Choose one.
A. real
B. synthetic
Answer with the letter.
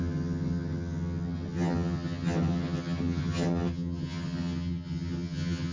B